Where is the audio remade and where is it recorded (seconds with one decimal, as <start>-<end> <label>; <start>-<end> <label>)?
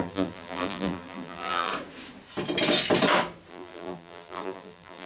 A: 0.0-1.7 remade; 1.7-3.5 recorded; 3.5-5.1 remade